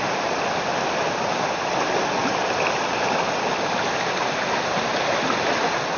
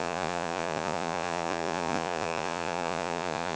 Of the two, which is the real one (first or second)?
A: first